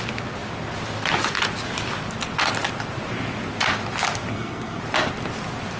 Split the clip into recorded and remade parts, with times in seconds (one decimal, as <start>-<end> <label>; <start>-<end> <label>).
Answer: 0.0-4.3 recorded; 4.3-4.8 remade; 4.8-5.8 recorded